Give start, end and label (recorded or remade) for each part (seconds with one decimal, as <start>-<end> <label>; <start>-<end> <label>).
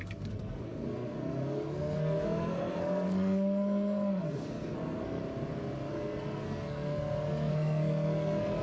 0.0-5.2 remade; 5.2-5.9 recorded; 5.9-8.6 remade